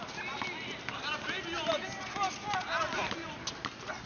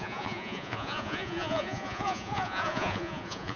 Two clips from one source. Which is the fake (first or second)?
second